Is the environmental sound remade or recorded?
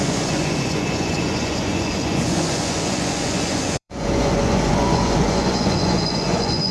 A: remade